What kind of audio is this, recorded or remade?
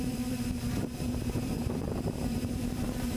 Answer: remade